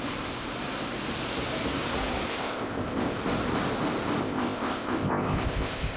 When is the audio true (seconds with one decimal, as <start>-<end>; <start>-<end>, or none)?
0.0-2.3; 3.2-4.2